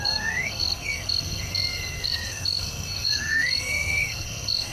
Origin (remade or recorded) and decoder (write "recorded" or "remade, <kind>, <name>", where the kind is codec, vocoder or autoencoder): remade, codec, SNAC